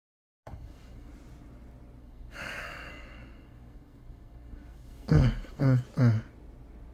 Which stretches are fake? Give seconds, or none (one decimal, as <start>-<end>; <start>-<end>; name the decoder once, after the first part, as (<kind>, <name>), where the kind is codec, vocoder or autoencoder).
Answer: 0.0-1.1 (codec, SNAC); 2.0-5.8